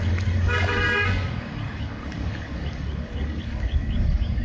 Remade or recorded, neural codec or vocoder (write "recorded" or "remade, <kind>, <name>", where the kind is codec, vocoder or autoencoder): remade, codec, DAC